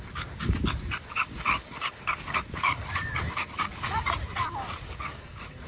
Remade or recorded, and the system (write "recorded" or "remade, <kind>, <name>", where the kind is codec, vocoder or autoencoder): remade, codec, DAC